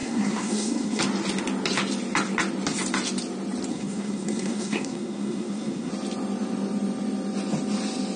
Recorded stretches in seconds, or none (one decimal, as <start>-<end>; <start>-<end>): 1.0-3.7; 5.9-8.2